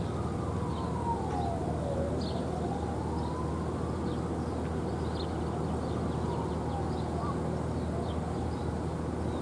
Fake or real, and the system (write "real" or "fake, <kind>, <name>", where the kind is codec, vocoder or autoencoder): real